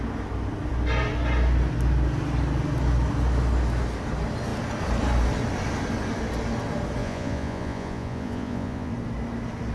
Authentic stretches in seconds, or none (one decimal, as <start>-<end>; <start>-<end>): 0.0-7.0; 8.9-9.7

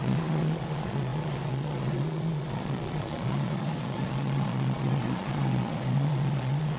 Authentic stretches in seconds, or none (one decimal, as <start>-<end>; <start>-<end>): none